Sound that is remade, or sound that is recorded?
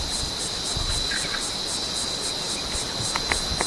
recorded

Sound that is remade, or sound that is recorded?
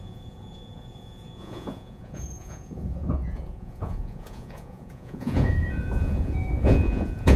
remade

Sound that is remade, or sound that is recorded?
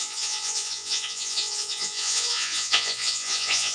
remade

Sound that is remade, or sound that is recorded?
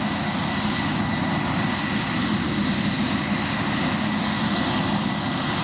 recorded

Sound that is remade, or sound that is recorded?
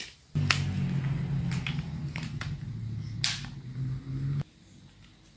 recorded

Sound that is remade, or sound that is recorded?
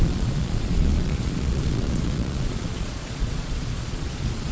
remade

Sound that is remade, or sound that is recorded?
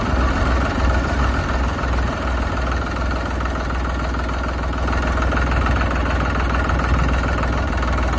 recorded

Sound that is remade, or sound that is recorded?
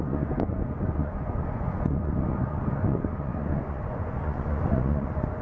remade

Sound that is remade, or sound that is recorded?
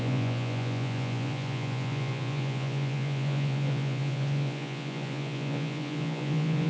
remade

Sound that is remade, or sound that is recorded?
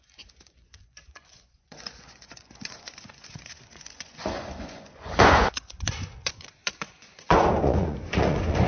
remade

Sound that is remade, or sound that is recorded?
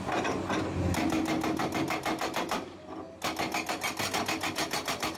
recorded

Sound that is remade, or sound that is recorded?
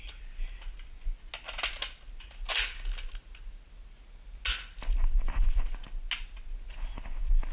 recorded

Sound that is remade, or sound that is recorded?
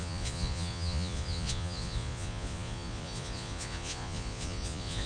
remade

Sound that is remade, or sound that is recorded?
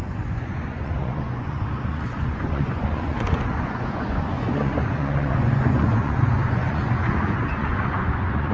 remade